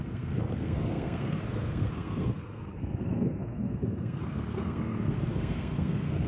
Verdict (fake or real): fake